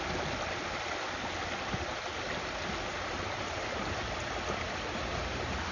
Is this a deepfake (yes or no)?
no